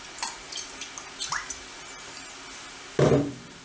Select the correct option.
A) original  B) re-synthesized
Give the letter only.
A